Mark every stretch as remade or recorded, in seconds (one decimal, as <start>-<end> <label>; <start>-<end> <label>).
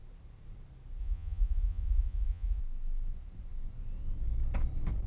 0.0-1.0 recorded; 1.0-2.6 remade; 2.6-5.1 recorded